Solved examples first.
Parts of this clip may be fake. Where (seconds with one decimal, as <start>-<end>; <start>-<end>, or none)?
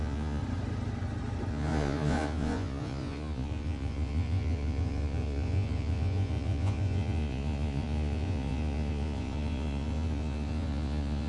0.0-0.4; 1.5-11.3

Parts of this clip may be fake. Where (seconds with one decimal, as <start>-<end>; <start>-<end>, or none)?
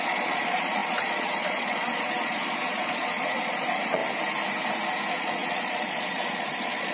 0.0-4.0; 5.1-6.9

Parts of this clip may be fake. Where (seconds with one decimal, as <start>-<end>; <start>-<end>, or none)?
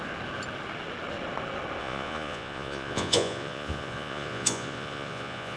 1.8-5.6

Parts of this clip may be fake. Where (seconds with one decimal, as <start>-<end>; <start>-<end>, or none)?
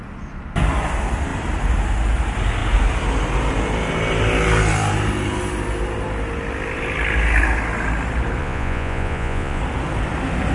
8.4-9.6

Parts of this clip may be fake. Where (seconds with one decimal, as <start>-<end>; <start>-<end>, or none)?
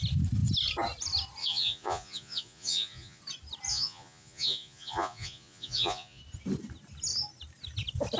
1.4-3.2; 3.7-6.2